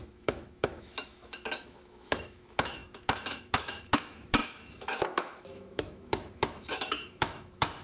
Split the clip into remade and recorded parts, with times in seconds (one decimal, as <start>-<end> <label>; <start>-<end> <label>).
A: 0.0-7.8 remade